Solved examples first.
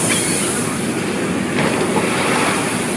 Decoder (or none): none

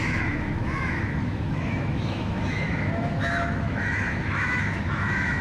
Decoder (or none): autoencoder, DAC-VAE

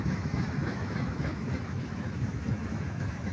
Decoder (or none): autoencoder, DAC-VAE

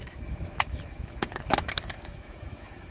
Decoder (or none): autoencoder, DAC-VAE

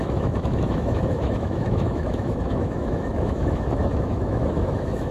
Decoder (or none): autoencoder, DAC-VAE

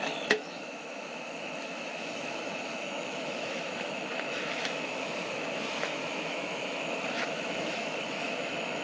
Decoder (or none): autoencoder, DAC-VAE